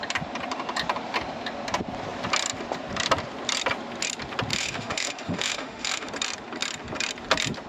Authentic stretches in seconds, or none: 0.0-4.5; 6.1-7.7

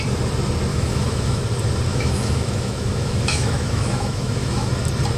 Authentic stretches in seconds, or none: 0.0-0.7; 1.4-1.9; 4.7-5.2

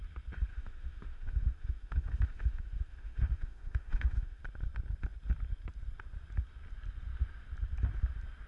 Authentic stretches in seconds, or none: 0.0-0.5; 4.4-8.5

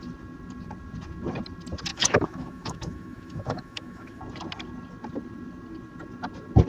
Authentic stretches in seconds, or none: 0.0-1.9; 4.2-6.7